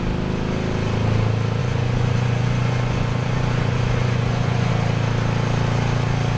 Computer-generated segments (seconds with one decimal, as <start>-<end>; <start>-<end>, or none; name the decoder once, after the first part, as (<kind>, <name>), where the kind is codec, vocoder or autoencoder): 1.6-4.7 (vocoder, Vocos)